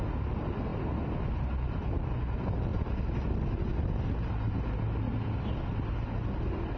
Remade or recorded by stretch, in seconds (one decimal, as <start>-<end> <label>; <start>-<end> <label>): 0.0-6.8 recorded